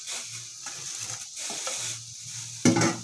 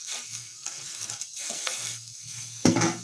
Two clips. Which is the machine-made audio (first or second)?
second